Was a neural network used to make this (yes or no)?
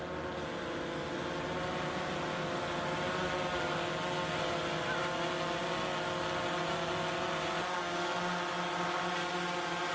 no